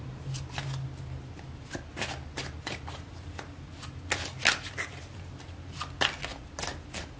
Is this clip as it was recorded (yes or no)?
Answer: yes